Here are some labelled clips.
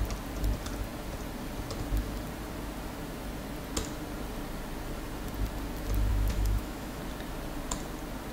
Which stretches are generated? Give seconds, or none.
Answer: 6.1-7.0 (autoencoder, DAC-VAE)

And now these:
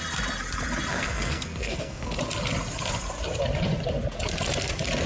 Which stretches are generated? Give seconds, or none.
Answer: 0.9-2.2 (codec, SNAC)